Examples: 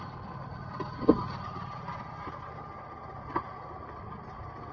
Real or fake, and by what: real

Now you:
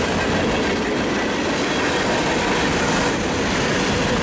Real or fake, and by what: real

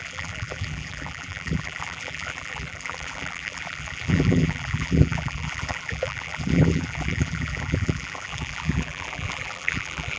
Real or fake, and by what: fake, vocoder, BigVGAN v2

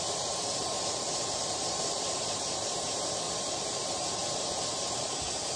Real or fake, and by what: fake, vocoder, BigVGAN v2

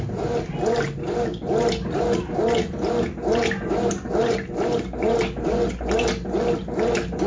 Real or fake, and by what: real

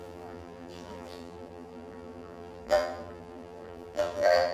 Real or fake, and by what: fake, vocoder, BigVGAN v2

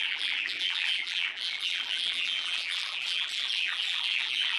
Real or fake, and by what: fake, vocoder, BigVGAN v2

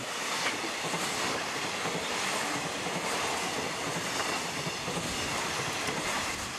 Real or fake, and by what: fake, vocoder, BigVGAN v2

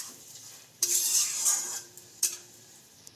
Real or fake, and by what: fake, vocoder, BigVGAN v2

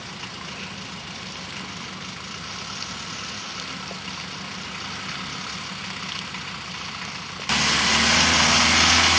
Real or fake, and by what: real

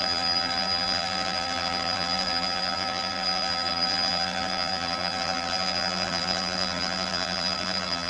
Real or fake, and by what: fake, vocoder, BigVGAN v2